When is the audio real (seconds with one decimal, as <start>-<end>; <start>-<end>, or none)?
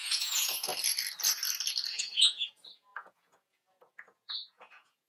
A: 0.7-1.9